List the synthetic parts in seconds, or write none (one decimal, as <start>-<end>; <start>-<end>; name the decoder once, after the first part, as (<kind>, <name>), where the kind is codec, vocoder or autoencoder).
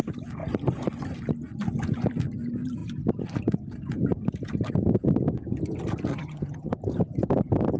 6.1-6.7 (vocoder, HiFi-GAN)